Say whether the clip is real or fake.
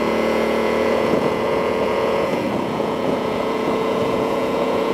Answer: fake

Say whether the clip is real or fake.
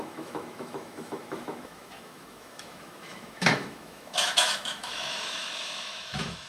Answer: fake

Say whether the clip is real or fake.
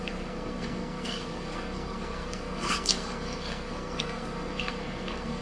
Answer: fake